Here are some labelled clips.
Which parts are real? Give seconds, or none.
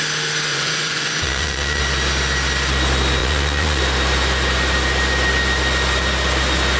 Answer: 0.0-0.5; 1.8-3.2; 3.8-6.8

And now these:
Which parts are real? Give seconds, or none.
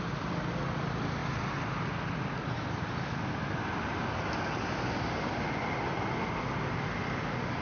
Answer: 0.0-7.6